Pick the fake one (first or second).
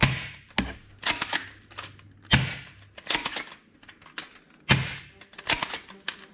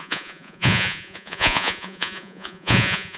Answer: second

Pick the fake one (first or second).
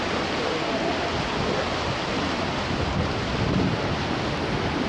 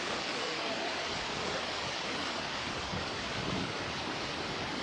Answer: second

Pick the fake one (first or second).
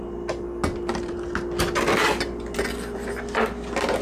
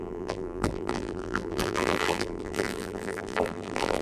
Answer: second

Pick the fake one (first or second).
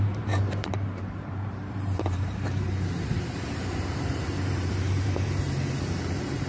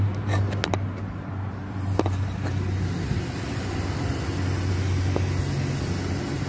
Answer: first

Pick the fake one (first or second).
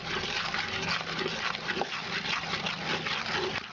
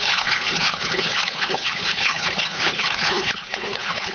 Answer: second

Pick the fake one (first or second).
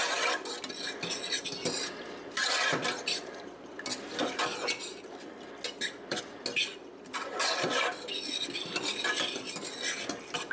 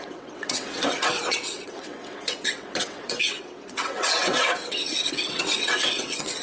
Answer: second